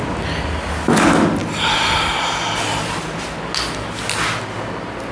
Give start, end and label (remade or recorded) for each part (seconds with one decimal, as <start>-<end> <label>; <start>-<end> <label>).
0.0-5.1 recorded